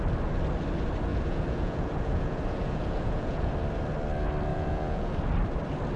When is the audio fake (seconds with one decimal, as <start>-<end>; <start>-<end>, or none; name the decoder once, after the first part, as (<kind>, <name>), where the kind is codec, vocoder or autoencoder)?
1.1-3.5 (vocoder, Vocos); 4.5-5.1